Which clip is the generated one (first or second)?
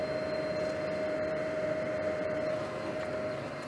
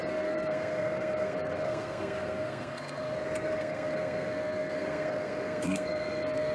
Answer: second